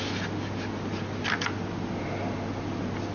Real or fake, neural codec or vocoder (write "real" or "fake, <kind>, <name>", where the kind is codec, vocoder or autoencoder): real